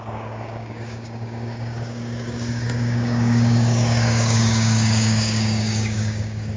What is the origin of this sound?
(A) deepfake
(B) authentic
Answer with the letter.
A